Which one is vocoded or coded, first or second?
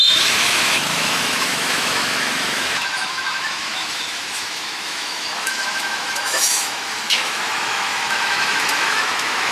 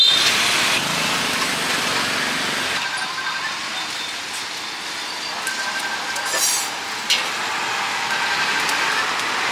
first